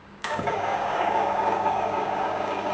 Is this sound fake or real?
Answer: fake